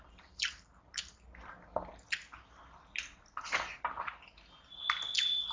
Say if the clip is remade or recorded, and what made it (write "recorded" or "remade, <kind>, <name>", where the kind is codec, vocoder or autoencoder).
recorded